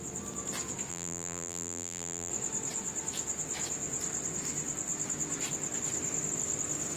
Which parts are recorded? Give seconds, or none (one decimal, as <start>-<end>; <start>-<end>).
0.0-0.9; 2.3-7.0